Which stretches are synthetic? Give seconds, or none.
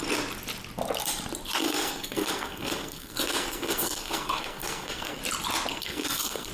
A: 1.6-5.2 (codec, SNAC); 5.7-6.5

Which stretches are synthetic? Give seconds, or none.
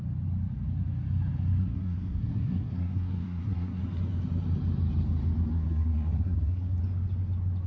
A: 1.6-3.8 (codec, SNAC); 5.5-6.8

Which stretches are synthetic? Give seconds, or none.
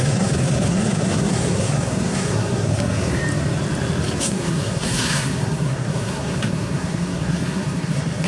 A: 0.0-3.2 (codec, SNAC); 4.2-8.3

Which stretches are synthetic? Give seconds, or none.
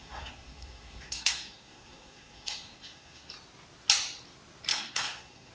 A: 0.0-3.3 (codec, SNAC); 4.7-5.5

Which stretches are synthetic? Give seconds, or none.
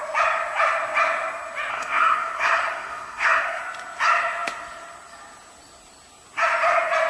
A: 1.7-3.6 (codec, SNAC)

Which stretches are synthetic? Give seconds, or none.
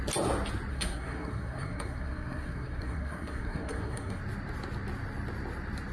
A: 0.7-4.2 (codec, SNAC)